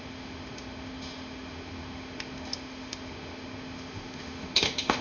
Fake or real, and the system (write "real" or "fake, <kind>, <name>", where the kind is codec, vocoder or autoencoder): fake, autoencoder, DAC-VAE